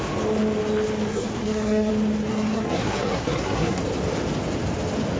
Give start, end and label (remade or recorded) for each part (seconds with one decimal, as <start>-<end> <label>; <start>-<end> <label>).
0.0-1.1 recorded; 1.1-1.9 remade; 1.9-2.3 recorded; 2.3-3.8 remade; 3.8-5.2 recorded